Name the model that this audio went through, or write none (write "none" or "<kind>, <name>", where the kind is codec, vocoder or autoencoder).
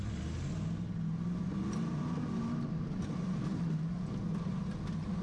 none